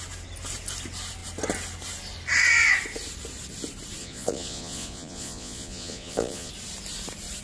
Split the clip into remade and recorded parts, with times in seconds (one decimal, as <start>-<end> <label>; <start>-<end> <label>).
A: 0.0-4.0 recorded; 4.0-6.5 remade; 6.5-7.4 recorded